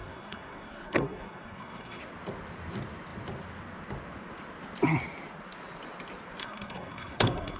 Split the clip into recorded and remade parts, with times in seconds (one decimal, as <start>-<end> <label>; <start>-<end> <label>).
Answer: 0.0-2.0 remade; 2.0-6.4 recorded; 6.4-7.6 remade